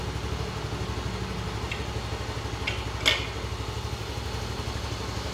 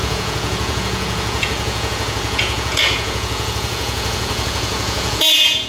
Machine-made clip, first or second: second